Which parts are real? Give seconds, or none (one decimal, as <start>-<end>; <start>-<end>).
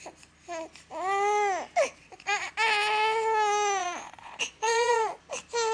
0.0-2.0; 2.5-3.8; 5.2-5.7